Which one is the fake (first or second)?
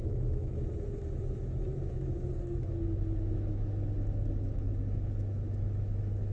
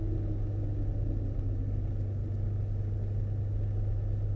first